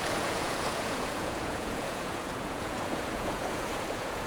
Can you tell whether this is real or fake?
fake